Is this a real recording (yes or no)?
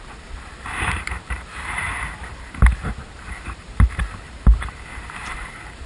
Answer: no